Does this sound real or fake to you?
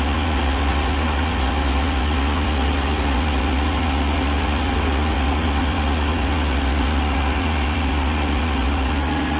fake